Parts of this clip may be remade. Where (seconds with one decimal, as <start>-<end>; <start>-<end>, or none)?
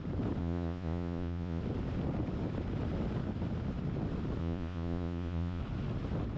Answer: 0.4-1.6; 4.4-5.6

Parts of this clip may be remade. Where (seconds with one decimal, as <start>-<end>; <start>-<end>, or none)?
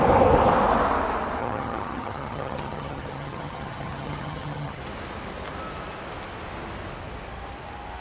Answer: 1.4-4.8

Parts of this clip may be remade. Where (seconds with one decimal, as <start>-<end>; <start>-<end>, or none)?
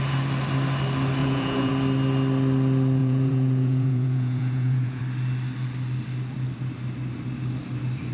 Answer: 1.2-1.7; 3.0-5.0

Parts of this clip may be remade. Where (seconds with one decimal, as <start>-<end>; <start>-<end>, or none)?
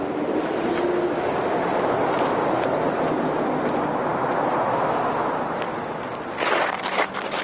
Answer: 1.7-3.3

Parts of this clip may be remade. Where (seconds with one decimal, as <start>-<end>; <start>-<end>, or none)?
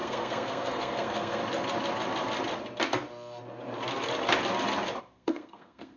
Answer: 0.0-1.4; 5.0-6.0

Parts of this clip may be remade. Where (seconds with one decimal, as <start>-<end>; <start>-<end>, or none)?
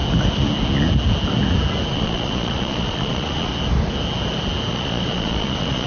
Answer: 1.9-3.5; 4.7-5.9